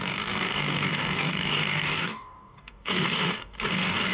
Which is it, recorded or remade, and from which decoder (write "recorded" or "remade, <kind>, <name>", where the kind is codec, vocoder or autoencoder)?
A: remade, codec, DAC